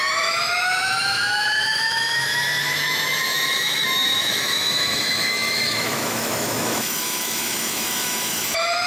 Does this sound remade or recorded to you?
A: remade